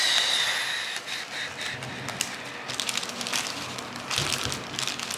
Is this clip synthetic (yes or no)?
no